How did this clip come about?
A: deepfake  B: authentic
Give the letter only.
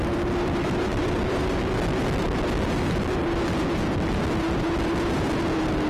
A